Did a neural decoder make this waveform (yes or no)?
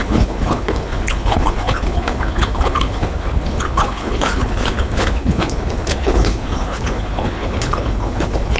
yes